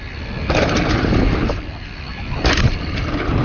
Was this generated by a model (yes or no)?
no